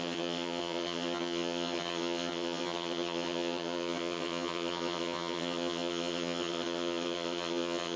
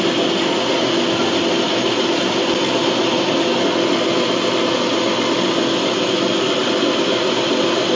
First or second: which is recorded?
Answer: second